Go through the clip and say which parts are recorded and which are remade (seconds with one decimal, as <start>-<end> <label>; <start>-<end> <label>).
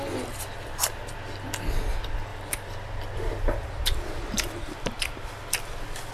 0.0-2.3 recorded; 2.3-6.1 remade